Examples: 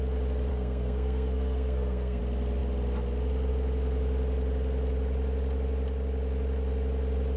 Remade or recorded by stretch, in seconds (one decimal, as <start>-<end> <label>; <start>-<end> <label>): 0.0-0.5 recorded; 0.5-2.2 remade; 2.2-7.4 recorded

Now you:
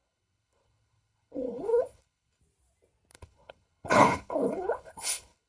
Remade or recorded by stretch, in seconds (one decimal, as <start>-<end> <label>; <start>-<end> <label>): 0.0-2.4 remade; 2.4-3.1 recorded; 3.1-5.5 remade

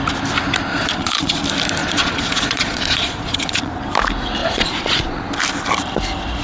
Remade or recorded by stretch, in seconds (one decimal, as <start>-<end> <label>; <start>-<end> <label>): 0.0-0.7 recorded; 0.7-1.4 remade; 1.4-1.8 recorded; 1.8-3.7 remade; 3.7-4.4 recorded; 4.4-5.2 remade; 5.2-6.4 recorded

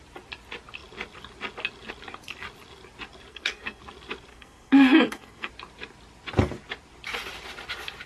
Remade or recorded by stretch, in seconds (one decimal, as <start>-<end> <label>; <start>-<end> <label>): 0.0-3.3 recorded; 3.3-3.8 remade; 3.8-4.3 recorded; 4.3-5.5 remade; 5.5-8.1 recorded

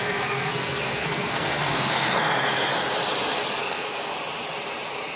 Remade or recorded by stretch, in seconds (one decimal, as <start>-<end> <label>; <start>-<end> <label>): 0.0-2.7 remade; 2.7-3.6 recorded; 3.6-4.1 remade; 4.1-5.2 recorded

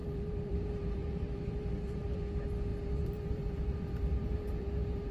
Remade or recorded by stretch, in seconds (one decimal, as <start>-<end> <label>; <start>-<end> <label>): 0.0-2.2 remade; 2.2-2.7 recorded; 2.7-5.1 remade

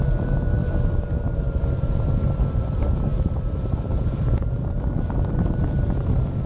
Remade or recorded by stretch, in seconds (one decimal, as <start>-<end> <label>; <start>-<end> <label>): 0.0-0.6 recorded; 0.6-1.4 remade; 1.4-3.1 recorded; 3.1-5.3 remade; 5.3-6.5 recorded

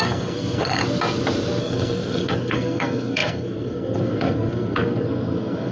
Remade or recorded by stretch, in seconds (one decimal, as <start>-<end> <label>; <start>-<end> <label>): 0.0-0.8 remade; 0.8-1.6 recorded; 1.6-5.7 remade